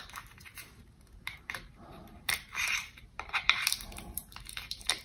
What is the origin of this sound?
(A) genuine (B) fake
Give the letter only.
B